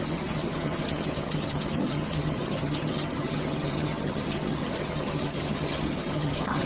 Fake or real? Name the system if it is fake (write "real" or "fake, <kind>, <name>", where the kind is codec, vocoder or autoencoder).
fake, vocoder, HiFi-GAN